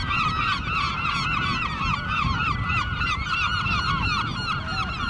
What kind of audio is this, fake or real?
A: real